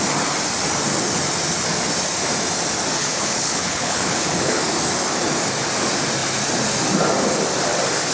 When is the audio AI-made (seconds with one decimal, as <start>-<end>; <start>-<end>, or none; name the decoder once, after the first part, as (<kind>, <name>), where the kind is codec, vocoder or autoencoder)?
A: 3.0-4.6 (codec, HILCodec)